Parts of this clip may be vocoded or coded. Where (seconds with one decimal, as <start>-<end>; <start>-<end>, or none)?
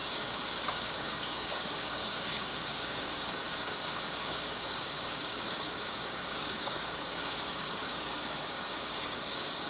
0.0-9.7